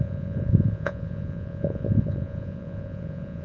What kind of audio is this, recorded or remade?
remade